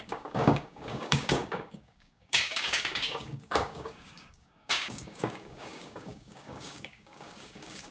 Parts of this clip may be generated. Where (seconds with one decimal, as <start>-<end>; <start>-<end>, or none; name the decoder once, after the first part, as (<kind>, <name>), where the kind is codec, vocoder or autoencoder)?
0.0-7.9 (codec, DAC)